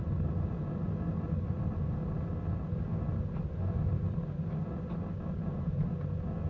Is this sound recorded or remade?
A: recorded